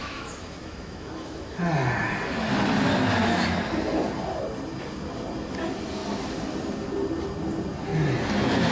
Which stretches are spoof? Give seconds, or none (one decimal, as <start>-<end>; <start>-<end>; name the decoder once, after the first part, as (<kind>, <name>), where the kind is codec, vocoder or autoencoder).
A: 0.0-1.6 (autoencoder, DAC-VAE)